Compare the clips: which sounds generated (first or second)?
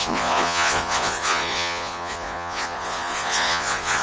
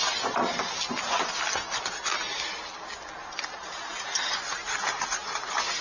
first